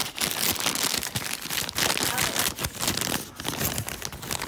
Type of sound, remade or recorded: recorded